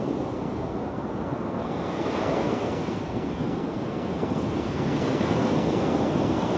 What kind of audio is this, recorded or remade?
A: remade